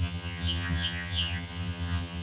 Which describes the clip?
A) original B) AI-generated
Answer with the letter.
B